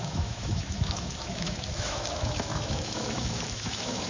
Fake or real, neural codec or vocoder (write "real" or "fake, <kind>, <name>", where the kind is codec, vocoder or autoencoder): fake, autoencoder, DAC-VAE